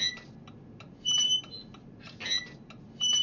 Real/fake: real